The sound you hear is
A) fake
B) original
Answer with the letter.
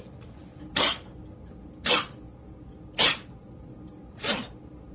B